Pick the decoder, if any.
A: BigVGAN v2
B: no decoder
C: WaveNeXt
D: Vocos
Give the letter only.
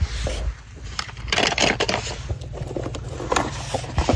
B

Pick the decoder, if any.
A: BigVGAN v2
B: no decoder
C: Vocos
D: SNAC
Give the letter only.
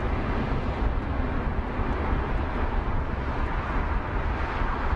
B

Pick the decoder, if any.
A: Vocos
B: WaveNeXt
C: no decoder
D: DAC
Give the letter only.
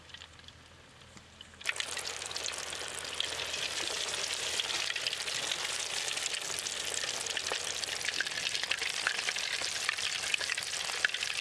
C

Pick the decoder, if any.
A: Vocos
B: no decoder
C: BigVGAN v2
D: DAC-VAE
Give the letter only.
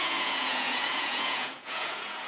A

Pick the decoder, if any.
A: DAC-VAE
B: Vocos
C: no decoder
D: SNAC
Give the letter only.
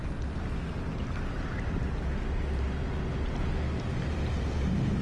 C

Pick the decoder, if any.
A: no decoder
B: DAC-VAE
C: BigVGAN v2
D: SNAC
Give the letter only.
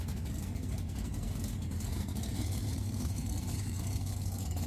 D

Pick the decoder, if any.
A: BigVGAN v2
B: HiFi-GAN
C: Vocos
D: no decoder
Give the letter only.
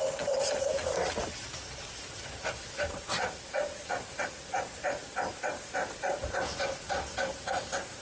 D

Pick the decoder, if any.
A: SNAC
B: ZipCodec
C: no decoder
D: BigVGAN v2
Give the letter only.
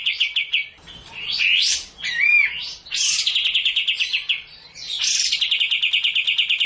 C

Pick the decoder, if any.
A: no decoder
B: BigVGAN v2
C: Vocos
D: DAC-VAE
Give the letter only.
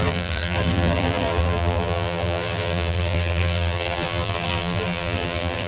B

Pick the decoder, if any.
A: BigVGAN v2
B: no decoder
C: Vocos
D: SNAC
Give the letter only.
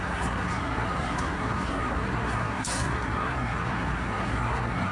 D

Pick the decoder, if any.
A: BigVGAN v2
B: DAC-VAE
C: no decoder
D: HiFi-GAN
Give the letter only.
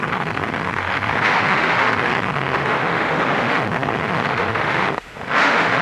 B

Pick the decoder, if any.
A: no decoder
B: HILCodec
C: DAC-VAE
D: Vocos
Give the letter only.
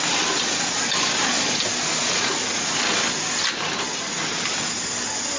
A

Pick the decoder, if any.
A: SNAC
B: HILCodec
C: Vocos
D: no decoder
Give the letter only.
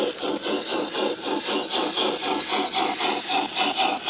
D